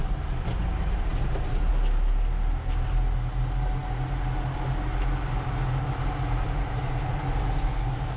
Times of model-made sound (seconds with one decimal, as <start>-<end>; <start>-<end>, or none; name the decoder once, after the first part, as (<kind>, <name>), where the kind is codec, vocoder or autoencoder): none